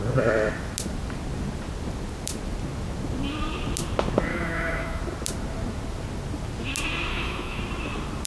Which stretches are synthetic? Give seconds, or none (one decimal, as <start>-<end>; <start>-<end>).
4.3-5.0; 7.1-7.6